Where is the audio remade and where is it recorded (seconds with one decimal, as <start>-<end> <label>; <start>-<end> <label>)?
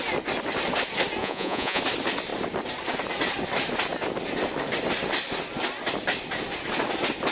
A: 0.0-1.2 recorded; 1.2-1.8 remade; 1.8-7.3 recorded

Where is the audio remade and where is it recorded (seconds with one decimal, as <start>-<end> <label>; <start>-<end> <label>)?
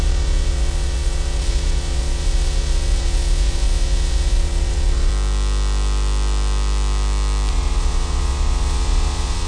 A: 0.0-5.1 remade; 5.1-7.5 recorded; 7.5-9.5 remade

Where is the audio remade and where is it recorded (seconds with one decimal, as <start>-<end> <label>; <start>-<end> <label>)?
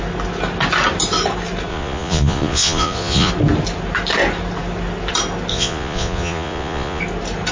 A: 0.0-1.7 recorded; 1.7-3.3 remade; 3.3-5.5 recorded; 5.5-7.0 remade; 7.0-7.5 recorded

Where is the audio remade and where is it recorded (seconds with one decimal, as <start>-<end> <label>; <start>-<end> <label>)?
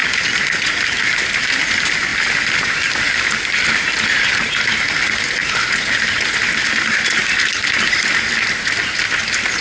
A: 0.0-9.6 recorded